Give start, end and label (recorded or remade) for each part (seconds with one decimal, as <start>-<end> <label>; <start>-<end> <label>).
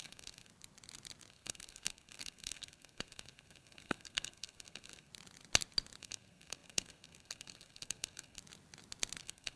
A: 0.0-0.5 remade; 0.5-1.3 recorded; 1.3-5.1 remade; 5.1-6.0 recorded; 6.0-8.4 remade; 8.4-9.2 recorded; 9.2-9.6 remade